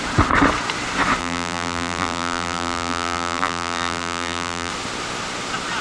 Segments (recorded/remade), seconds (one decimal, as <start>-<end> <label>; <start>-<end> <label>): 0.0-1.2 recorded; 1.2-4.7 remade; 4.7-5.8 recorded